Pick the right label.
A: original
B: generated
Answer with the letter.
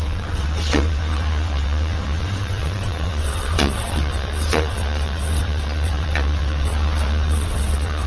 B